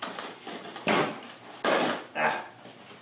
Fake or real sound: real